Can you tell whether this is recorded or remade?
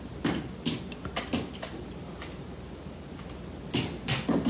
recorded